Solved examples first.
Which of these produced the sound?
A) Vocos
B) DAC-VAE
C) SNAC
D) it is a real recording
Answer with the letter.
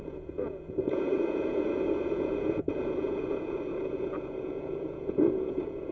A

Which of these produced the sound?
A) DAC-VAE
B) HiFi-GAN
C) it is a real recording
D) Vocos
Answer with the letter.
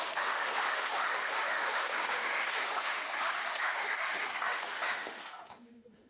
A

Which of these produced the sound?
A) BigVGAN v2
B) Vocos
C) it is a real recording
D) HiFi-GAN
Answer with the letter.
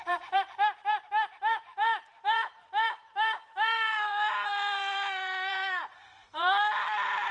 A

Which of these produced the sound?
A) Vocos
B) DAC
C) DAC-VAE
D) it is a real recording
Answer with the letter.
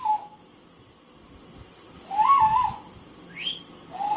D